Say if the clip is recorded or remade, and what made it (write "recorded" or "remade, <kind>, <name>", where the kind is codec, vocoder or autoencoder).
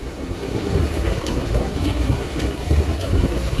remade, codec, SNAC